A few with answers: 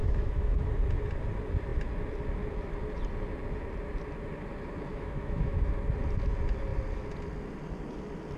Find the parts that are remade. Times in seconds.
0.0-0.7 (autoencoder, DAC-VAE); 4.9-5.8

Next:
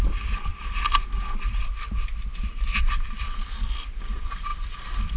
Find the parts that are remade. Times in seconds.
none

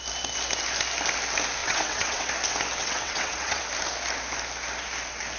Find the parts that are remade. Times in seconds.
1.6-2.3 (vocoder, WaveNeXt); 2.8-3.6

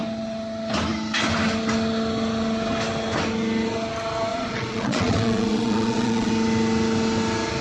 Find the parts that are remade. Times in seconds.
4.3-6.3 (vocoder, Vocos)

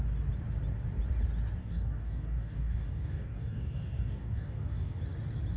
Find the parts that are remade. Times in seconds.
1.6-5.0 (codec, DAC)

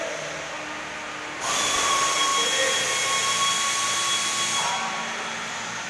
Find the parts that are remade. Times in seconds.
none

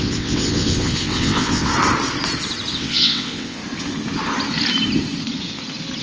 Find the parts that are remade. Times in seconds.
0.0-1.7 (vocoder, WaveNeXt); 2.7-3.6

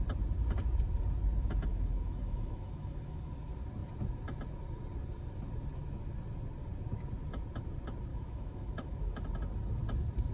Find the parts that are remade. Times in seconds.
1.7-3.3 (autoencoder, DAC-VAE); 8.1-9.2